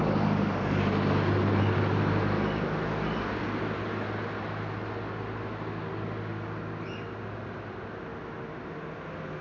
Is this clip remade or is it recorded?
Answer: recorded